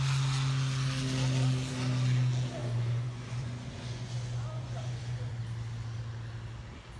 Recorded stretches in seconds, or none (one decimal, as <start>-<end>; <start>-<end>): 0.0-2.6; 5.4-7.0